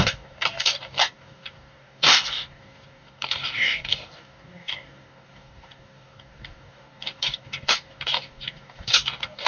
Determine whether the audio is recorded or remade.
remade